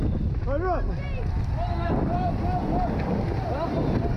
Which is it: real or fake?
real